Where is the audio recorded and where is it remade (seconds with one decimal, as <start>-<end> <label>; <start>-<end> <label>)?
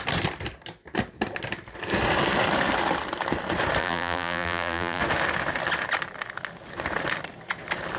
0.0-3.8 recorded; 3.8-5.0 remade; 5.0-8.0 recorded